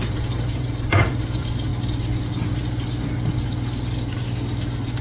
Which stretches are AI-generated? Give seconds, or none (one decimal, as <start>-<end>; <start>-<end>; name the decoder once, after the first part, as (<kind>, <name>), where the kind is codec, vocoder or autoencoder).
0.0-1.7 (vocoder, BigVGAN v2)